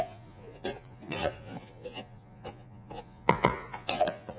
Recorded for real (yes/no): no